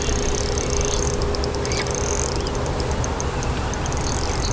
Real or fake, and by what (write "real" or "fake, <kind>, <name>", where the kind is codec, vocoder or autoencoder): real